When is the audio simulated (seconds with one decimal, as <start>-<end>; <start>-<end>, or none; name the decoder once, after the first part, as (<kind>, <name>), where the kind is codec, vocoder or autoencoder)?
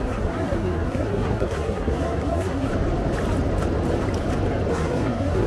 0.0-2.7 (codec, SNAC); 4.7-5.5